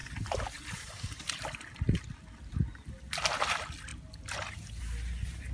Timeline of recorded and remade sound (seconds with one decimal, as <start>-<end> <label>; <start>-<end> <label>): 0.0-5.5 recorded